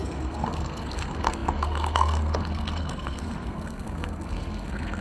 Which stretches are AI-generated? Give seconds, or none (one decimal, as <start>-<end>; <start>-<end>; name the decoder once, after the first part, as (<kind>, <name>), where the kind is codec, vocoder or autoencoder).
0.0-5.0 (codec, SNAC)

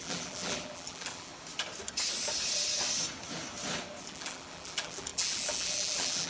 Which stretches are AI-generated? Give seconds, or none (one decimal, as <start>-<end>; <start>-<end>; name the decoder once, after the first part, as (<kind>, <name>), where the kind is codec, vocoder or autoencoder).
0.0-1.3 (vocoder, BigVGAN v2); 4.0-6.3

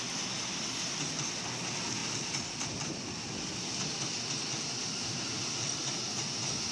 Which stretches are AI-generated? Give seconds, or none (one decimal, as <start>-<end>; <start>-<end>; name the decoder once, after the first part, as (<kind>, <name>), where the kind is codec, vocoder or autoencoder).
none

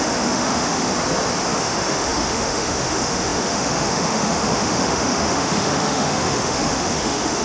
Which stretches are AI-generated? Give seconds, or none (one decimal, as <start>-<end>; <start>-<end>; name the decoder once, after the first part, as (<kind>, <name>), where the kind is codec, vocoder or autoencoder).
0.0-0.9 (autoencoder, DAC-VAE); 1.5-7.4

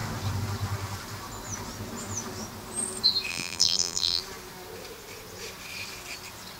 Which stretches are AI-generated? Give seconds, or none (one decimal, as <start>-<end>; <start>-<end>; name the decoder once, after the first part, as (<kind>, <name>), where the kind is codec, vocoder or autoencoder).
3.3-4.2 (vocoder, BigVGAN v2)

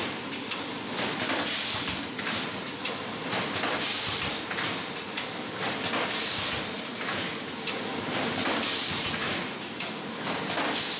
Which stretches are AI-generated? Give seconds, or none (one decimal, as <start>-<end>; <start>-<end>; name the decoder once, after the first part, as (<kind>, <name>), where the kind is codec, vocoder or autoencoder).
8.9-10.1 (vocoder, Vocos)